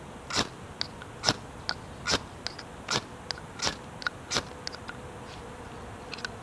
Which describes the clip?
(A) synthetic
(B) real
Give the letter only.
B